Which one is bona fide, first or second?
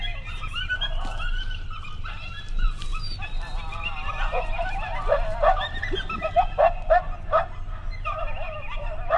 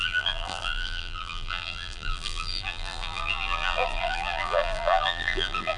first